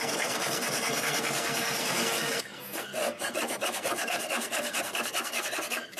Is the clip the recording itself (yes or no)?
no